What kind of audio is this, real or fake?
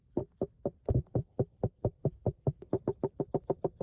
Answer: real